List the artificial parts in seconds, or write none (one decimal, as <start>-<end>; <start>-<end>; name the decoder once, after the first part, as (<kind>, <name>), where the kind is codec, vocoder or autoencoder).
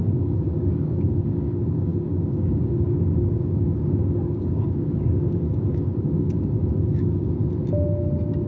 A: 0.0-7.4 (codec, DAC)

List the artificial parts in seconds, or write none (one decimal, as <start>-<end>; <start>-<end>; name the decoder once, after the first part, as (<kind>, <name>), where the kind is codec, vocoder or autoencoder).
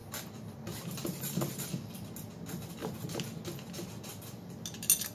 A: none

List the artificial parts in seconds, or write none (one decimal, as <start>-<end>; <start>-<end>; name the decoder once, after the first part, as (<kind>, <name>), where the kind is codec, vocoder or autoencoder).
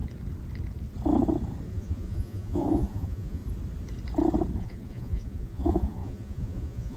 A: 1.7-3.4 (vocoder, Vocos); 4.6-7.0